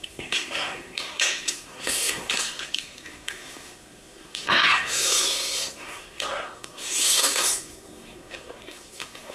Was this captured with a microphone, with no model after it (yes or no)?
no